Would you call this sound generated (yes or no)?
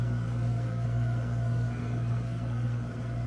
yes